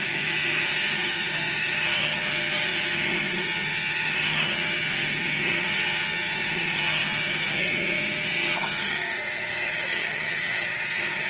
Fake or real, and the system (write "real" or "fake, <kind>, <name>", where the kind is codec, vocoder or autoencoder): fake, vocoder, HiFi-GAN